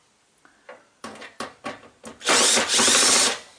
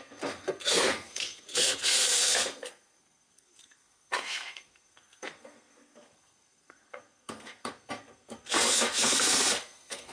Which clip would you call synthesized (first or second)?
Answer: second